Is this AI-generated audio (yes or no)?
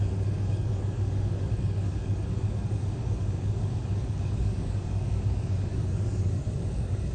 yes